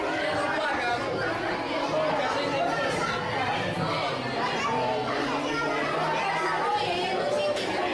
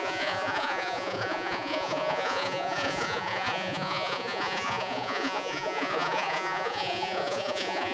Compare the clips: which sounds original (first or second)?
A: first